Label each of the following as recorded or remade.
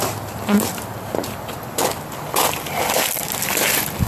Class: recorded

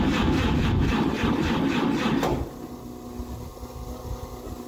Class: recorded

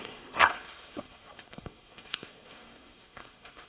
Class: remade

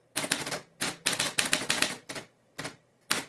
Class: recorded